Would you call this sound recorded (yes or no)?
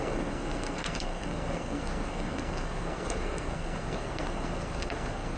no